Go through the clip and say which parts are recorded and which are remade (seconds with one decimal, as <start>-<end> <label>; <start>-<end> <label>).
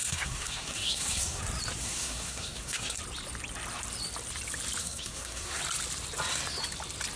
0.0-1.4 remade; 1.4-1.8 recorded; 1.8-3.0 remade; 3.0-4.8 recorded; 4.8-5.6 remade; 5.6-7.2 recorded